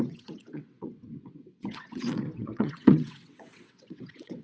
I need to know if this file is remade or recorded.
remade